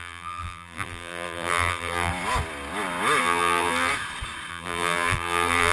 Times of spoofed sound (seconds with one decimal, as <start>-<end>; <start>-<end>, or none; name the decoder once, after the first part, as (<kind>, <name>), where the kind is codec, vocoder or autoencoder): 0.0-2.1 (vocoder, BigVGAN v2); 3.2-3.9; 4.5-5.7